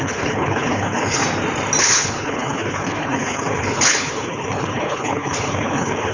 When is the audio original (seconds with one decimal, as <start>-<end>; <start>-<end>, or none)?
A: 1.2-1.8